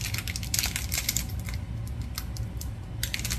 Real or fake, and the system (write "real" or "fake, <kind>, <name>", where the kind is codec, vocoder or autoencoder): real